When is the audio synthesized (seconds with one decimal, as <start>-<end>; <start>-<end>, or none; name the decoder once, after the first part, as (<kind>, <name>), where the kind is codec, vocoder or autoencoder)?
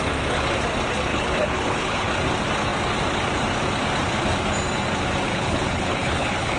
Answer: 1.1-2.1 (codec, HILCodec); 5.3-6.6